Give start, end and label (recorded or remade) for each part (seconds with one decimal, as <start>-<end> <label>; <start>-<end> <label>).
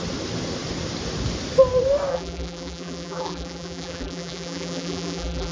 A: 0.0-2.1 recorded; 2.1-5.5 remade